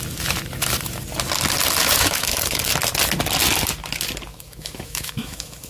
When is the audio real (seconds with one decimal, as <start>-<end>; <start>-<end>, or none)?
0.0-1.8; 2.7-4.3

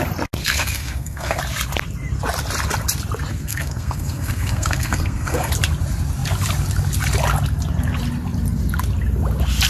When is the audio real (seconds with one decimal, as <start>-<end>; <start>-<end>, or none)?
0.0-0.4; 1.4-3.3; 5.5-9.7